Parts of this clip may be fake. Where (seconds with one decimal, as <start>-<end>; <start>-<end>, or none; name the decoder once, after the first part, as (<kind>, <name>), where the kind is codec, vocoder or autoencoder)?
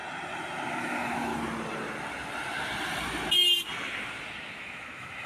0.7-1.3 (autoencoder, DAC-VAE); 4.5-5.3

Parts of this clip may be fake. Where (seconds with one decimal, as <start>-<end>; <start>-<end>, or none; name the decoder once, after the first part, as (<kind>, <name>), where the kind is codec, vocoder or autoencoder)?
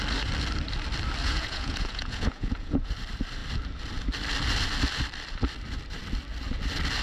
1.2-2.9 (vocoder, Vocos)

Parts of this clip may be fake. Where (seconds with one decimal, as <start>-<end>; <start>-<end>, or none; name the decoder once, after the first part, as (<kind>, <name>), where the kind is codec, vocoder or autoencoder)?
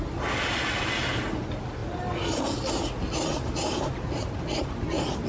none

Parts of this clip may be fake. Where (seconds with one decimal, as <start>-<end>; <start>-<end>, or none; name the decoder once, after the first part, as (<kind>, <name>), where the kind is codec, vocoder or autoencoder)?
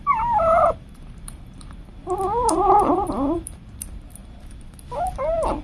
0.0-1.9 (vocoder, BigVGAN v2); 2.5-4.2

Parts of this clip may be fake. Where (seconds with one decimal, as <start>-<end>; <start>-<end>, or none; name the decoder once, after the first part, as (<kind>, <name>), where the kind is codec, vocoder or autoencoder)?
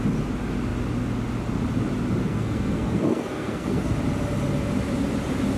2.2-3.9 (codec, SNAC)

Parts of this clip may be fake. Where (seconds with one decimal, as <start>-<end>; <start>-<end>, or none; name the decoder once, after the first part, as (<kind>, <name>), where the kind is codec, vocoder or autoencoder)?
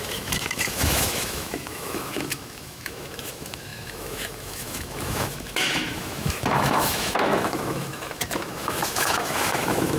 0.0-10.0 (autoencoder, DAC-VAE)